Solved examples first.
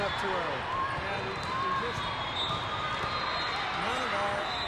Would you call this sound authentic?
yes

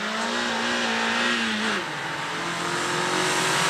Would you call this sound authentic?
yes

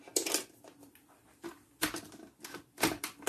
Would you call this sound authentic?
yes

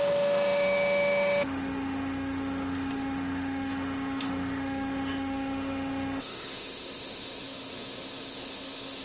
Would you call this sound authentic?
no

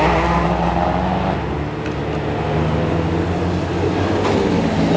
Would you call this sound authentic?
yes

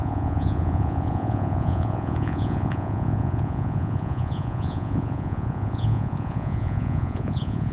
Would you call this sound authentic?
no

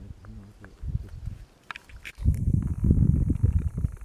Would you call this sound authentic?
yes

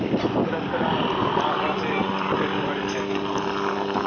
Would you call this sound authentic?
yes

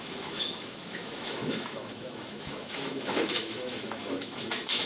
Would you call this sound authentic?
no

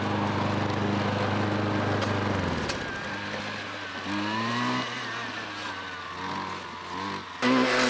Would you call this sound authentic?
yes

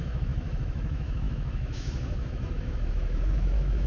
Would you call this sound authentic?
no